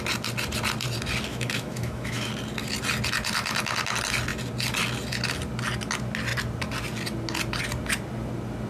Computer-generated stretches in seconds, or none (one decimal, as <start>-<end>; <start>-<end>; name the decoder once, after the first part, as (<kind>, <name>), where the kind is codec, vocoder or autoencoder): 1.3-2.3 (autoencoder, DAC-VAE)